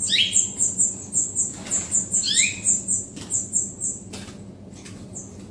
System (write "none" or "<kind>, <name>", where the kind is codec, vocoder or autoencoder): none